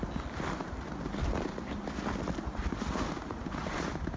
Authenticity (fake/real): real